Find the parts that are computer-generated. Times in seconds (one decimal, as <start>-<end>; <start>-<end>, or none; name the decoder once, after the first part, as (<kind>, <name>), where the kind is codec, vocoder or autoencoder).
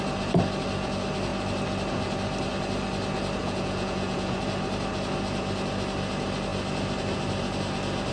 3.4-4.4 (vocoder, Vocos)